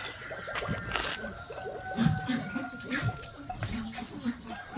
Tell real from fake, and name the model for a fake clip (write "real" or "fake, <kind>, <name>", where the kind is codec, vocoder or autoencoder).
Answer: real